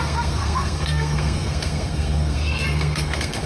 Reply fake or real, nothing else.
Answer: fake